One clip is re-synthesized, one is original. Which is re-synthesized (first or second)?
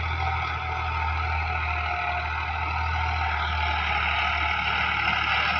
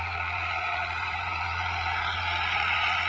second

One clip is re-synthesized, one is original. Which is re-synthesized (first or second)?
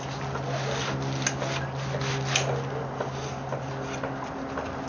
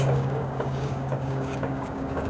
second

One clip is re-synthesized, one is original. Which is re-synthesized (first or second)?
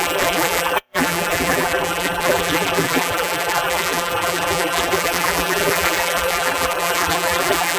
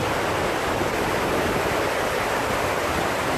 first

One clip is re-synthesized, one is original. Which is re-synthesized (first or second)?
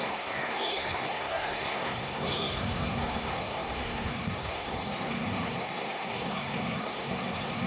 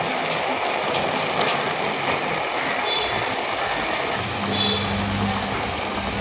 first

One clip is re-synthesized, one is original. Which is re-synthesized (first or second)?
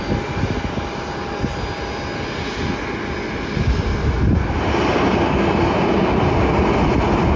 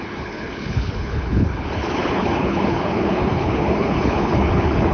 second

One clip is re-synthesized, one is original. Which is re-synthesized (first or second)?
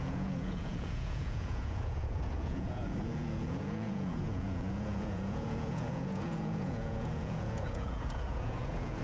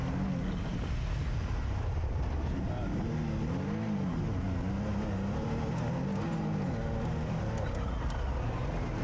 first